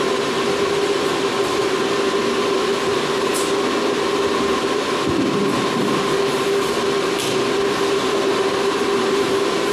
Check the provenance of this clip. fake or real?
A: real